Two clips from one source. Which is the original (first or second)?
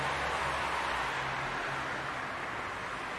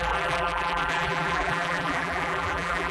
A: first